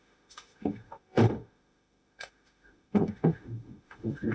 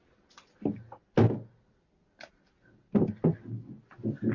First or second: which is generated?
first